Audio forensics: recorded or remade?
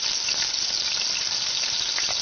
recorded